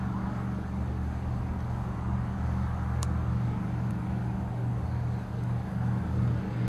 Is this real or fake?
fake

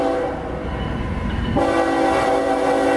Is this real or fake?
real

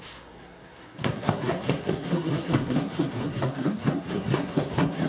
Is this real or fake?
fake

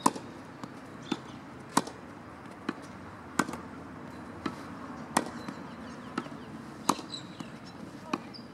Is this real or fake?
real